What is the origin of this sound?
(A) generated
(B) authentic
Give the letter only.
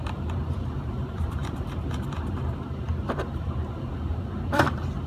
A